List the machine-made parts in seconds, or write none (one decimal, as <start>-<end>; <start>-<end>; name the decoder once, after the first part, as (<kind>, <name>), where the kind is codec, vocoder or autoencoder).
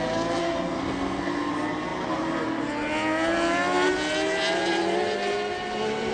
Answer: 0.4-1.5 (codec, SNAC)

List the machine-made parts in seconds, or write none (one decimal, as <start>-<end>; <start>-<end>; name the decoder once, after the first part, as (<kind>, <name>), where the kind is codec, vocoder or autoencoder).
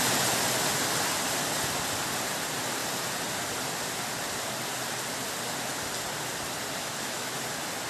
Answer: 6.8-7.4 (autoencoder, DAC-VAE)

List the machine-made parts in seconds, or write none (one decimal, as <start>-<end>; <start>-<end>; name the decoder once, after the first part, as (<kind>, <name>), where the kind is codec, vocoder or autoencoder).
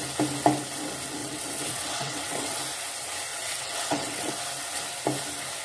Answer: 1.2-2.6 (vocoder, WaveNeXt); 3.3-4.3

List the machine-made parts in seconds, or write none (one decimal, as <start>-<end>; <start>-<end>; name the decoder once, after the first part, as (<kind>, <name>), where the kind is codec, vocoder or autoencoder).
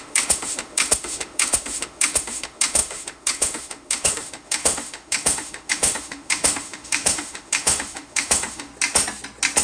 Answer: 0.0-8.7 (autoencoder, DAC-VAE)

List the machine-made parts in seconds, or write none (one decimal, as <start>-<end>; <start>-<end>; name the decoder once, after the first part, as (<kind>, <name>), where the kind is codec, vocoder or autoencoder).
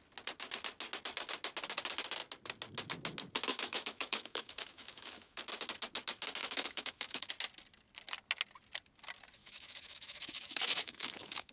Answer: 3.5-5.4 (autoencoder, DAC-VAE); 6.4-7.3; 9.4-11.5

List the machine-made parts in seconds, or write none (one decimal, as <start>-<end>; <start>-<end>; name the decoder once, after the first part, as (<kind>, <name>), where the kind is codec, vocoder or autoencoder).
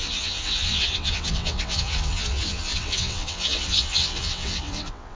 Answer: 0.0-5.2 (vocoder, WaveNeXt)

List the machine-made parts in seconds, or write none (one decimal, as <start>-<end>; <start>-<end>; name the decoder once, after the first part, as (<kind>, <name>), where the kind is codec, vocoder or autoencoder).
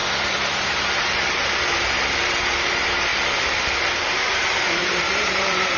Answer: 0.0-3.1 (vocoder, BigVGAN v2); 4.4-5.8